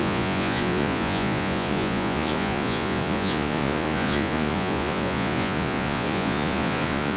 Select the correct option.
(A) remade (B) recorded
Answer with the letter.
A